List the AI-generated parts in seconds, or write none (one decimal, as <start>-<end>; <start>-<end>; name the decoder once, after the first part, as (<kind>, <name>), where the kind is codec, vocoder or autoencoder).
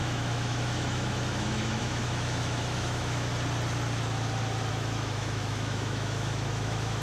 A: 0.0-3.3 (autoencoder, DAC-VAE); 4.7-7.0